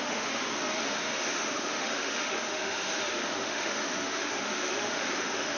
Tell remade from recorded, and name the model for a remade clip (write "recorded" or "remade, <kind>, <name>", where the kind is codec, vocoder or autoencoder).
remade, autoencoder, DAC-VAE